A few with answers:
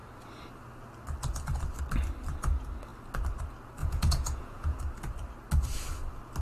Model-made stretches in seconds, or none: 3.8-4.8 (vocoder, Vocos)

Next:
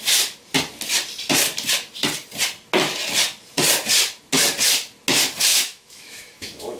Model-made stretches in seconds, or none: 5.5-6.8 (autoencoder, DAC-VAE)

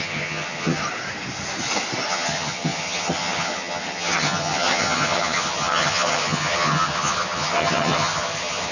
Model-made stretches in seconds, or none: 0.0-0.8 (vocoder, HiFi-GAN); 2.1-8.7

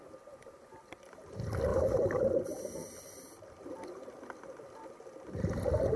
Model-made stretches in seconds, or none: none

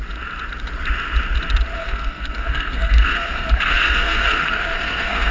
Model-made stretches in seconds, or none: 1.8-5.3 (codec, SNAC)

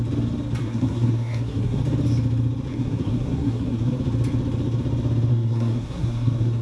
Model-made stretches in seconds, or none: 0.6-1.8 (codec, SNAC); 2.7-4.0; 5.3-6.6

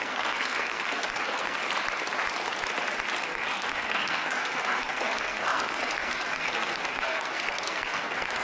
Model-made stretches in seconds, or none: 0.0-1.6 (codec, SNAC); 3.2-8.4

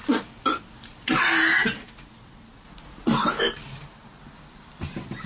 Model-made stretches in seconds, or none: none